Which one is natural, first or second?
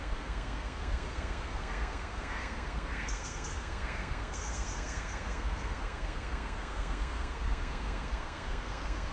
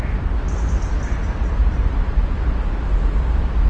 second